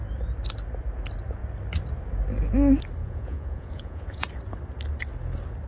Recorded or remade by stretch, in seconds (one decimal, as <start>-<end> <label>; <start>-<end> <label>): 0.0-3.0 recorded; 3.0-4.4 remade; 4.4-5.7 recorded